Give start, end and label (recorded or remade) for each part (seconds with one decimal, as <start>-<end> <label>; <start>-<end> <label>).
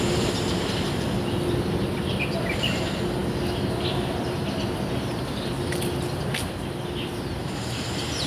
0.0-8.3 recorded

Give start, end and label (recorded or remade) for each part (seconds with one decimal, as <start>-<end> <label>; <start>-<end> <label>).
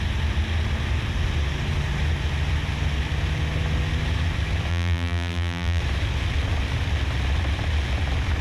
0.0-4.7 recorded; 4.7-5.8 remade; 5.8-8.4 recorded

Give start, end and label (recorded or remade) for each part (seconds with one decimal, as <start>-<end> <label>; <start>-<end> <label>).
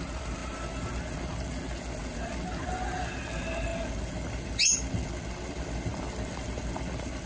0.0-7.3 recorded